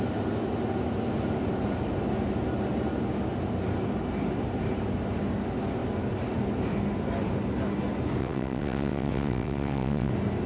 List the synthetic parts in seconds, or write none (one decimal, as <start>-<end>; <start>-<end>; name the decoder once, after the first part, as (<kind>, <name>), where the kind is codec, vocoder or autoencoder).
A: 8.2-10.1 (vocoder, WaveNeXt)